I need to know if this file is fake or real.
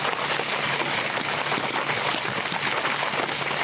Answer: real